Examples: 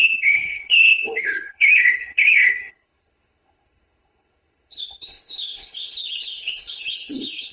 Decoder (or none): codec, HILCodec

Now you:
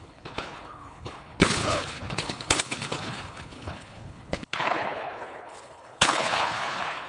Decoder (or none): codec, HILCodec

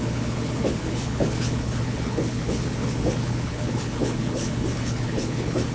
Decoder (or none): codec, HILCodec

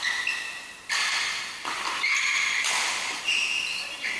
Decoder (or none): none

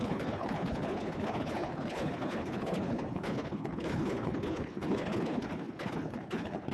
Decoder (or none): codec, HILCodec